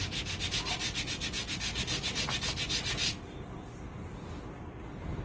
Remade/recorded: recorded